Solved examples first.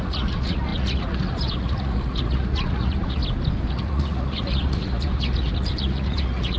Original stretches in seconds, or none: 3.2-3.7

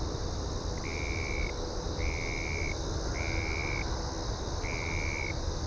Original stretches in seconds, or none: 0.0-5.7